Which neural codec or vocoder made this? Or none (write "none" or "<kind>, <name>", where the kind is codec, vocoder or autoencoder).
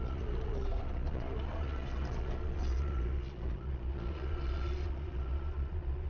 vocoder, Vocos